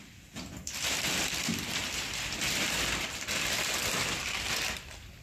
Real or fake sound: fake